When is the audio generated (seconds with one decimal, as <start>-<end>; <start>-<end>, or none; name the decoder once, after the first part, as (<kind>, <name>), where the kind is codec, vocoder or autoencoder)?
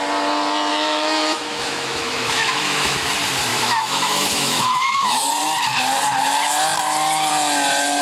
0.7-3.1 (autoencoder, DAC-VAE); 3.5-5.3